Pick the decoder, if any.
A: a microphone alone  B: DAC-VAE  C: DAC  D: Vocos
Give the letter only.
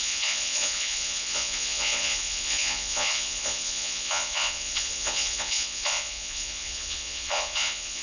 D